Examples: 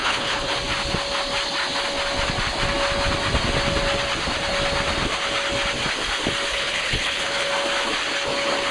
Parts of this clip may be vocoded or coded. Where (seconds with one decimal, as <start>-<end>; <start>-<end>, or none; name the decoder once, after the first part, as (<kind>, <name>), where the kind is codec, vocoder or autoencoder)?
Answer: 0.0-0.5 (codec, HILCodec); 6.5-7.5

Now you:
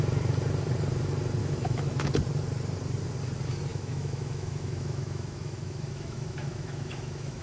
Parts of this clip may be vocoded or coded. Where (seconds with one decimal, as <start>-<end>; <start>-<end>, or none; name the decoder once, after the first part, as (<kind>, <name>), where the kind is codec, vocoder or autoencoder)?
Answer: 1.4-2.1 (autoencoder, DAC-VAE); 3.7-7.4

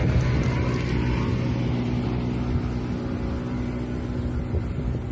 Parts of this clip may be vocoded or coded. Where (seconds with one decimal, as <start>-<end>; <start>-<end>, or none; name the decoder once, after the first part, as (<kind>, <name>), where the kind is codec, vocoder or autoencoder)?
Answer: none

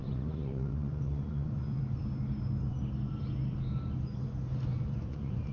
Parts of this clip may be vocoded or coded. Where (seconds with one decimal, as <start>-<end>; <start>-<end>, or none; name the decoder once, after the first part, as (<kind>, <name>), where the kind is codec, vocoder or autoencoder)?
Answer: 0.0-1.8 (vocoder, Vocos); 4.7-5.5